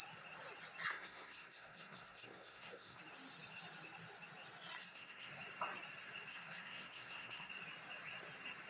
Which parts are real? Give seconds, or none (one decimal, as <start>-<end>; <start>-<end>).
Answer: 0.0-0.9; 3.0-4.8; 5.3-6.3; 7.5-8.7